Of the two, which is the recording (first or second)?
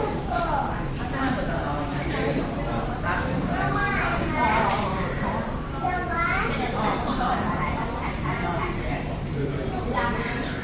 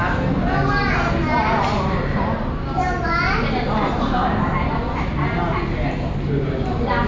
second